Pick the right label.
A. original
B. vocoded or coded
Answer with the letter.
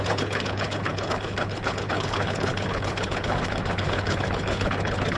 B